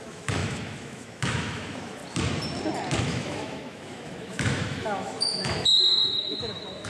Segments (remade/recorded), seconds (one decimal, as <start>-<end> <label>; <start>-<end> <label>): 0.0-2.0 remade; 2.0-3.0 recorded; 3.0-6.9 remade